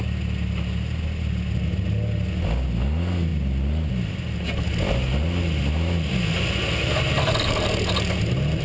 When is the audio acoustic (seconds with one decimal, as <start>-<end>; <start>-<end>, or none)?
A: 0.0-8.6